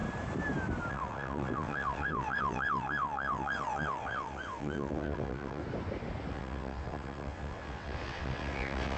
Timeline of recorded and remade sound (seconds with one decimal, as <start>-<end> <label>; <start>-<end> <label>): 0.0-0.9 recorded; 0.9-5.6 remade; 5.6-6.3 recorded; 6.3-9.0 remade